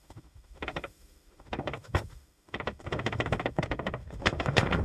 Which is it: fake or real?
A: fake